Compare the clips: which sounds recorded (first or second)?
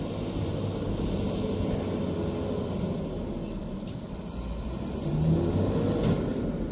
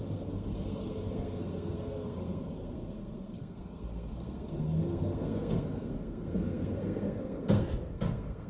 first